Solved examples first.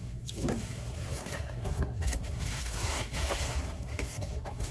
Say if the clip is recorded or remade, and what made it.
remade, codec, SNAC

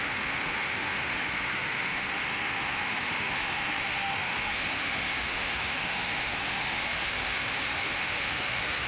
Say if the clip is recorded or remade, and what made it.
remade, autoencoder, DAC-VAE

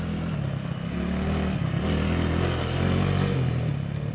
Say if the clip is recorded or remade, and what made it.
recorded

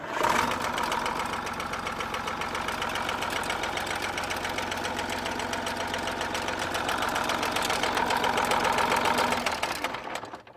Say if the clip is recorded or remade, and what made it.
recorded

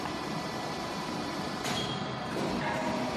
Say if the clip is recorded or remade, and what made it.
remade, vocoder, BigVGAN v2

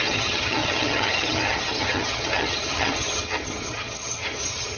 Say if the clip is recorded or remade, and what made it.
remade, vocoder, HiFi-GAN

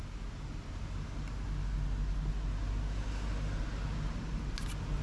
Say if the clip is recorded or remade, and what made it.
recorded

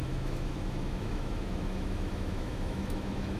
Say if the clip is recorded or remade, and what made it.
remade, autoencoder, DAC-VAE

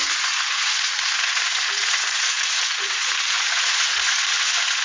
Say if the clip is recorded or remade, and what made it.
remade, vocoder, Vocos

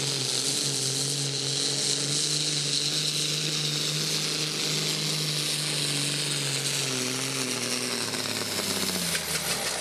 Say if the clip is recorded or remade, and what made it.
recorded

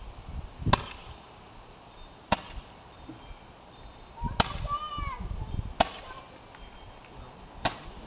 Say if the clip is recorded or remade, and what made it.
recorded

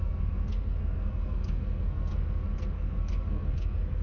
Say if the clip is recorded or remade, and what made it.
remade, codec, SNAC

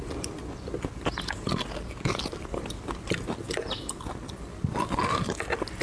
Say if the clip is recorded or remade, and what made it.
recorded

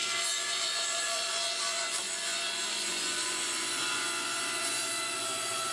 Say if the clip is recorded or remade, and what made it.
remade, vocoder, Vocos